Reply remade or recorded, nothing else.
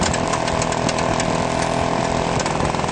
recorded